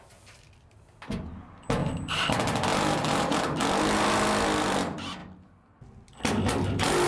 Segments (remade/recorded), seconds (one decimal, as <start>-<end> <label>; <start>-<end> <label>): 0.0-1.8 recorded; 1.8-2.3 remade; 2.3-7.1 recorded